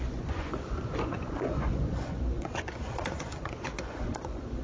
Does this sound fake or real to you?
fake